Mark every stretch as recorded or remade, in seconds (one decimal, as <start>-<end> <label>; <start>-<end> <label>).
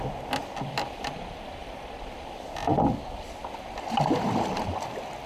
0.0-5.3 recorded